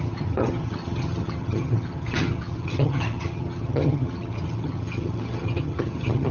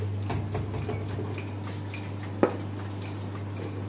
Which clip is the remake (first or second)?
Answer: first